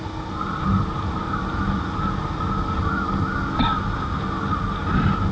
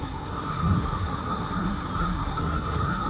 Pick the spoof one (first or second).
second